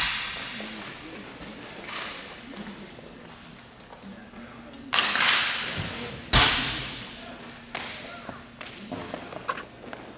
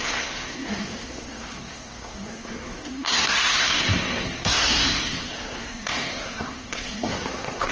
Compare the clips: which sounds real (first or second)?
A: first